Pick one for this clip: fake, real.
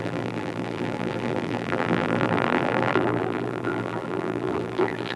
fake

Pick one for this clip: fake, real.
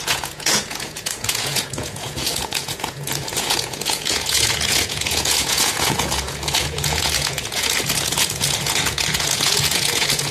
fake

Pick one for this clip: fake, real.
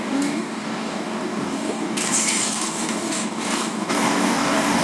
fake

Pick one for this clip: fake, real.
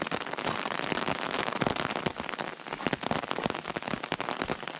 real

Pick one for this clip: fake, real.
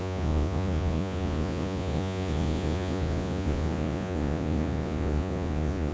fake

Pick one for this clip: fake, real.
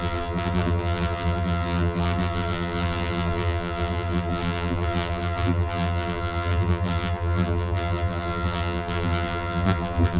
fake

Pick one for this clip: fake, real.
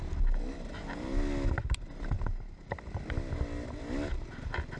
real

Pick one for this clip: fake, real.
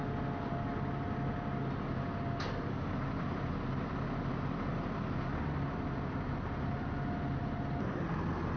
real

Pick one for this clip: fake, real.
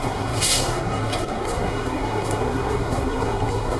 fake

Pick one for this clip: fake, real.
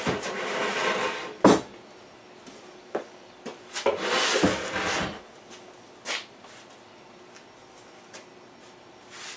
real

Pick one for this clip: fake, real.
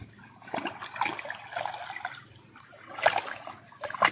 real